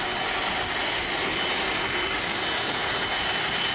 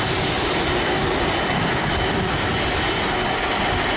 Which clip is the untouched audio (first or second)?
first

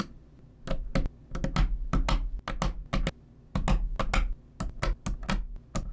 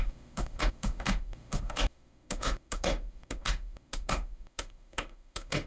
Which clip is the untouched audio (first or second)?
first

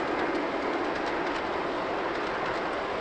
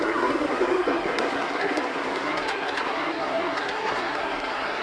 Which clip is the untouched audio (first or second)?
first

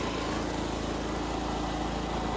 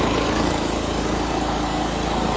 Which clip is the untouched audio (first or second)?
first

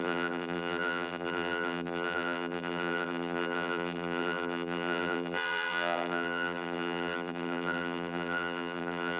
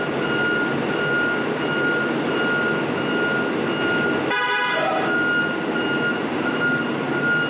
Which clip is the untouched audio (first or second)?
second